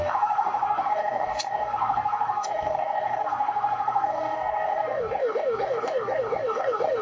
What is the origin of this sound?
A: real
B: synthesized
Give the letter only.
B